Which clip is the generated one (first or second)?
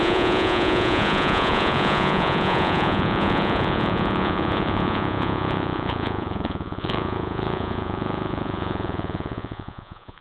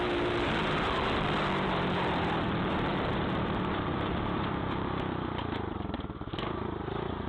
first